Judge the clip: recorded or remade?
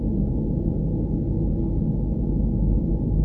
recorded